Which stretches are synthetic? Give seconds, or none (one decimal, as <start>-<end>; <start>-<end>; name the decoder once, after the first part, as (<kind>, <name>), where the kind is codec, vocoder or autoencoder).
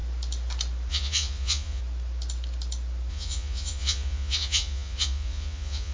0.9-1.8 (vocoder, Vocos); 3.1-5.9